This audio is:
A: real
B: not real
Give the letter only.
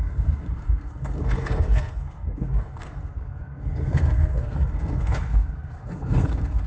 B